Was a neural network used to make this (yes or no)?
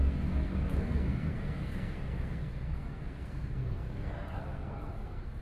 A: yes